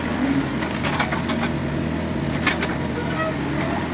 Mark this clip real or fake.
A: real